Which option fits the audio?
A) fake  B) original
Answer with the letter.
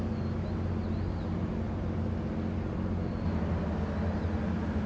B